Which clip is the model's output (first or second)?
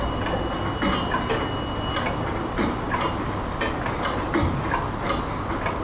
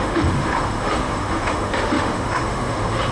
second